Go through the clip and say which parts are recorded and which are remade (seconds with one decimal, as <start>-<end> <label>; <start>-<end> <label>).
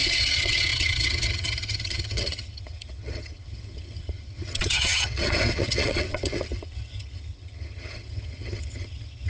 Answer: 0.0-9.3 remade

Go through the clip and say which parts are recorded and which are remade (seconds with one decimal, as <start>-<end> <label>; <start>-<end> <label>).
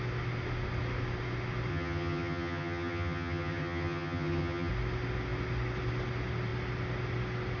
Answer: 0.0-1.7 recorded; 1.7-4.7 remade; 4.7-7.6 recorded